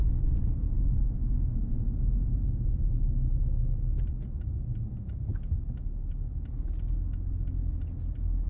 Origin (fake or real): real